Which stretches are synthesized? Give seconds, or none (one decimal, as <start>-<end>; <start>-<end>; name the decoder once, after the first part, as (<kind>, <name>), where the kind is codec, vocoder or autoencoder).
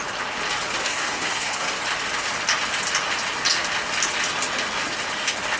0.8-1.8 (codec, SNAC)